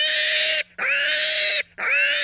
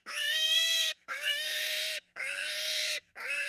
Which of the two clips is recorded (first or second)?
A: first